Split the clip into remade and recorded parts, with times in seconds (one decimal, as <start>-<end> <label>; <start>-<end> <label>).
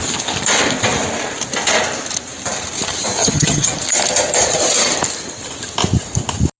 0.0-3.2 recorded; 3.2-3.7 remade; 3.7-6.6 recorded